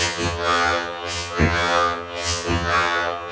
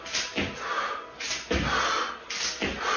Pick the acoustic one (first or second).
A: second